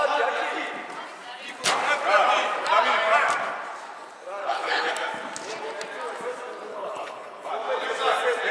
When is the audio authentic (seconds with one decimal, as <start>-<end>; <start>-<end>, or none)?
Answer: 0.0-4.4; 4.9-6.7; 7.5-8.5